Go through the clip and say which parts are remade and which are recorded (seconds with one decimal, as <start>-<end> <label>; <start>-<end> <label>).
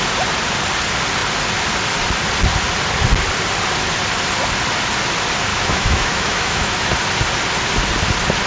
0.0-5.5 recorded; 5.5-6.9 remade; 6.9-8.5 recorded